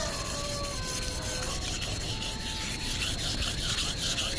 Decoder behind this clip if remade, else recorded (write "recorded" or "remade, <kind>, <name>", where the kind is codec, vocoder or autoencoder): recorded